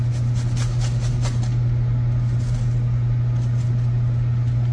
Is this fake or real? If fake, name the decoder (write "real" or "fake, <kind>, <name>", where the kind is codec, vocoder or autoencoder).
real